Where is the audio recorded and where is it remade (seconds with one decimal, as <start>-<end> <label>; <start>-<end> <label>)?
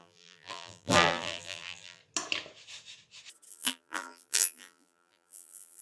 0.0-2.0 remade; 2.0-3.5 recorded; 3.5-5.8 remade